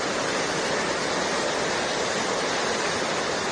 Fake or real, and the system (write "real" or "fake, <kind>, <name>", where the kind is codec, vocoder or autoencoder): real